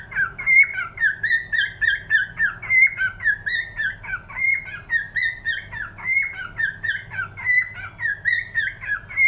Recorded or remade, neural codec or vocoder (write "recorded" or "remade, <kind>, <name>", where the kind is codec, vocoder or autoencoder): recorded